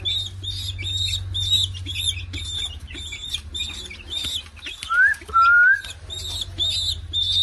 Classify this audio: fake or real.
real